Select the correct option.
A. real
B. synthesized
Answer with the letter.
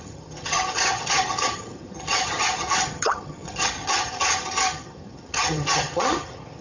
B